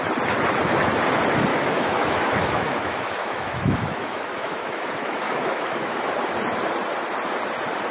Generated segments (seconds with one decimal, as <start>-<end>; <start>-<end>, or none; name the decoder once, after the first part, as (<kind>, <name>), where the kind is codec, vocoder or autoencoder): 1.5-6.0 (autoencoder, DAC-VAE)